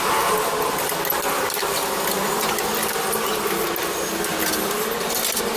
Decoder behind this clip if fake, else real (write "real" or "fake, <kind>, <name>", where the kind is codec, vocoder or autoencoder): real